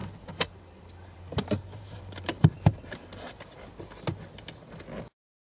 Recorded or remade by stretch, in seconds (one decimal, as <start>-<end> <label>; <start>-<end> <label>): 0.0-3.4 remade; 3.4-5.6 recorded